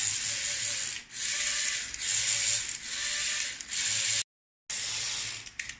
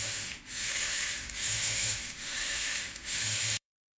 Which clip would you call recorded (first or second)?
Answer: first